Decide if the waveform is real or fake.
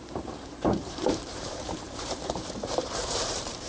fake